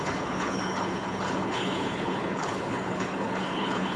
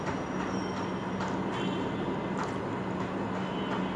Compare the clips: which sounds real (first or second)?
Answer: second